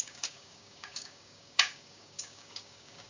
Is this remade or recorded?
remade